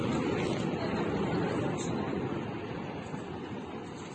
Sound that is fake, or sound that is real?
fake